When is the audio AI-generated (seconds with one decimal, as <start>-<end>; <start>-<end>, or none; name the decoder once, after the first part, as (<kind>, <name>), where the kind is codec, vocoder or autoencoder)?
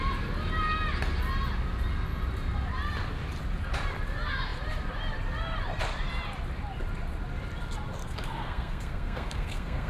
8.0-9.9 (codec, SNAC)